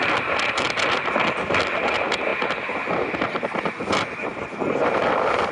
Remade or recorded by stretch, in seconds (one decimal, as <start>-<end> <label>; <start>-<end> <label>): 0.0-5.5 recorded